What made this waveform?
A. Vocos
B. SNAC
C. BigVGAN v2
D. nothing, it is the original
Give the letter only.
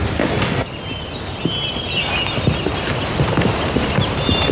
D